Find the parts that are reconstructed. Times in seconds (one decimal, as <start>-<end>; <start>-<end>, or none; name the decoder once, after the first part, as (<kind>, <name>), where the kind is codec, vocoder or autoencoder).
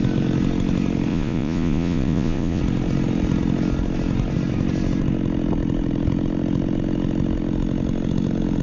1.1-2.6 (vocoder, Vocos)